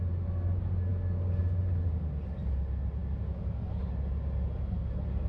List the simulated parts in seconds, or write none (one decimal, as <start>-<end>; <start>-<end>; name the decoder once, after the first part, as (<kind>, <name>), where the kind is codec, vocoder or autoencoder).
none